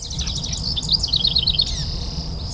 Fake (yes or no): no